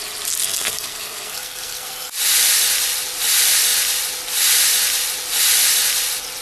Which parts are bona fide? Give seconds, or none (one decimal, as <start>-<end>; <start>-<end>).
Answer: 0.0-0.4; 2.1-6.4